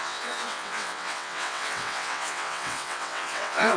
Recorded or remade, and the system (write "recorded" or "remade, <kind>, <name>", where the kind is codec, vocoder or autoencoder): remade, vocoder, WaveNeXt